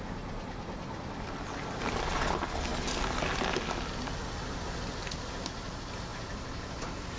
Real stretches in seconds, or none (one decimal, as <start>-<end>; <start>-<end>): 0.0-6.1